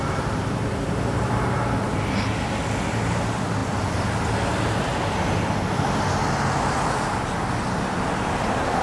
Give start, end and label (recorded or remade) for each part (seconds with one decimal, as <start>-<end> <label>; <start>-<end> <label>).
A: 0.0-8.8 recorded